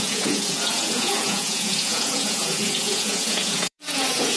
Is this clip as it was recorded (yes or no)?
no